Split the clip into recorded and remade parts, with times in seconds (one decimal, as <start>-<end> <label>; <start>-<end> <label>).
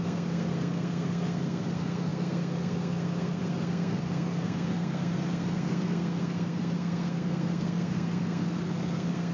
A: 0.0-9.3 remade